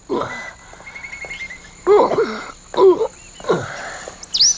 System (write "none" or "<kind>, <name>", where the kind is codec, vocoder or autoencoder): none